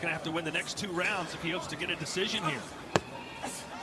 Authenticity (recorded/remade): remade